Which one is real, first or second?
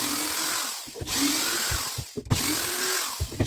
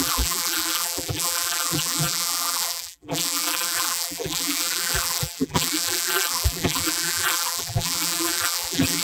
first